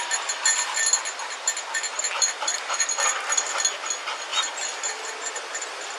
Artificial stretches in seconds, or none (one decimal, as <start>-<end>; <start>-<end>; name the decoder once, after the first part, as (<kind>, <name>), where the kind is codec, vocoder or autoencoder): none

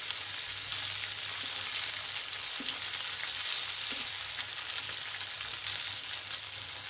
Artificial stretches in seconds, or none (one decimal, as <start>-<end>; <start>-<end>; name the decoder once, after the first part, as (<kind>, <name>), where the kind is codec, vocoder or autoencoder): none

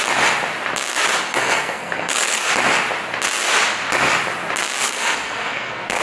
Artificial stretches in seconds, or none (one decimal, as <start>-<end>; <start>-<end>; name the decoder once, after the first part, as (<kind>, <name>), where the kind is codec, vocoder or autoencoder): 1.3-2.5 (codec, SNAC); 4.8-6.0

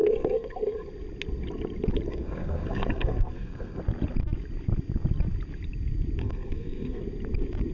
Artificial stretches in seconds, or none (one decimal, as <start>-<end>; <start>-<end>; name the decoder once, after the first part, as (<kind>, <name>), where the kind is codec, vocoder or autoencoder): 0.0-0.9 (codec, SNAC); 2.1-3.8; 6.2-7.0

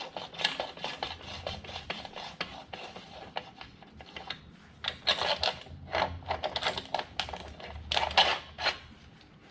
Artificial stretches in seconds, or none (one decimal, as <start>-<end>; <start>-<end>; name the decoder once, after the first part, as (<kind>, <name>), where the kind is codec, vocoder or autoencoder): none

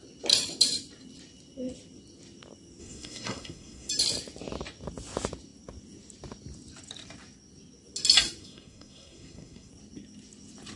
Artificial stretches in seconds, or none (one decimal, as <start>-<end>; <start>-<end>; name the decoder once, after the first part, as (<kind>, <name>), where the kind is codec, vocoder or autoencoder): 2.8-3.9 (codec, SNAC); 8.4-9.7

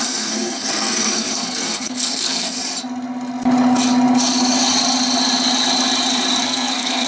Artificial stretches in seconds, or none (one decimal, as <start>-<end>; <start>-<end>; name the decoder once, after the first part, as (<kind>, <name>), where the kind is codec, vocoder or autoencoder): 0.0-2.6 (codec, SNAC); 6.4-7.1